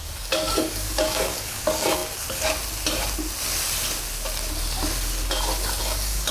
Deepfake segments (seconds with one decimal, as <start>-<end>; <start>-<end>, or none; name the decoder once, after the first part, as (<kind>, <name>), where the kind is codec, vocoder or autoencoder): 0.0-2.0 (codec, DAC); 5.8-6.3